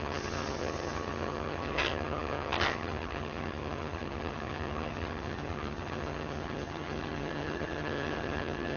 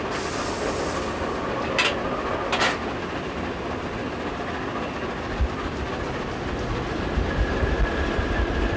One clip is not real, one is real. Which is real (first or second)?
second